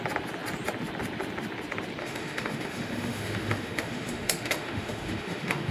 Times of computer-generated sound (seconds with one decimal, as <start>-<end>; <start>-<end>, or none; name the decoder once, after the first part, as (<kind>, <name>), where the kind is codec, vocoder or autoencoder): 2.0-5.7 (autoencoder, DAC-VAE)